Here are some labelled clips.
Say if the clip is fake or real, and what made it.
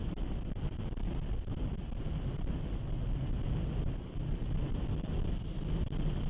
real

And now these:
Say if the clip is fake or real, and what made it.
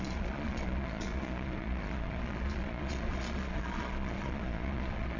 fake, vocoder, Vocos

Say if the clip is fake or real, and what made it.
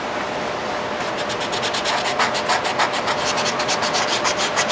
real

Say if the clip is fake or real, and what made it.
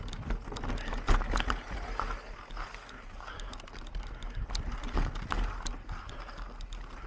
real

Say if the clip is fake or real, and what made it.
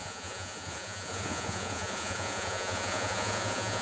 fake, vocoder, Vocos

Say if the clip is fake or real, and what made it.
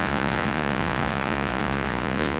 fake, vocoder, Vocos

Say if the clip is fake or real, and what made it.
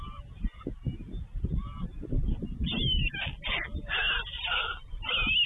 real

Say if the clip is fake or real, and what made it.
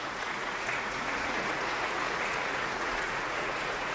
fake, vocoder, Vocos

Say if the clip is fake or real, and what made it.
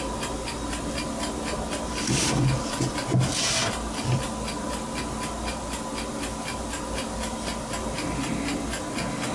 real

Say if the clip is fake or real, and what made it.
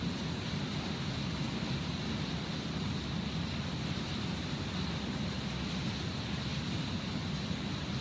real